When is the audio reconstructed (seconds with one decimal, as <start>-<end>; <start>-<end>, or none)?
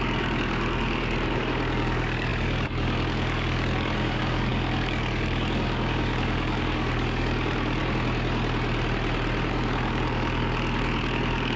0.0-7.8; 9.5-11.6